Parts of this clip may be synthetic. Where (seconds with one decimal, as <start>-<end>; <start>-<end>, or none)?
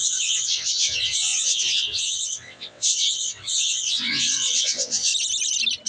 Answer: 0.0-5.1